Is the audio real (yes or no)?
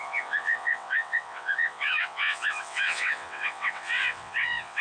no